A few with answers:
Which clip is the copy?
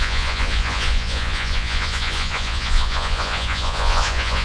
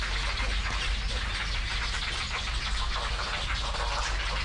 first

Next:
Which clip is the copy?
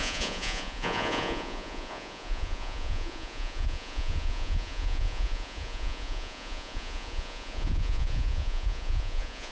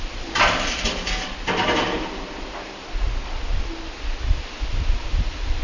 first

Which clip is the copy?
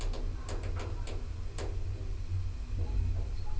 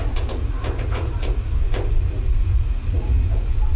second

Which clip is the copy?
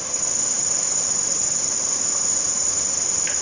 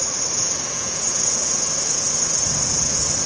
second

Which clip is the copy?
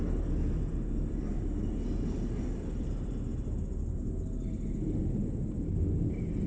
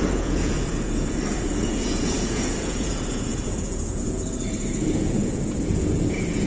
second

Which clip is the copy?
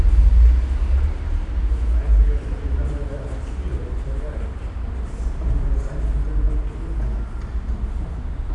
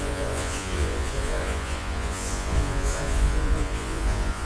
second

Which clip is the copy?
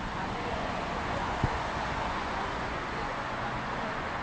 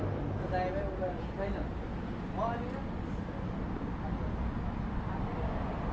first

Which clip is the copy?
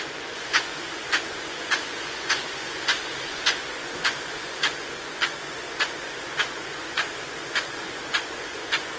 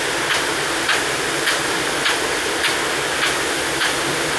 first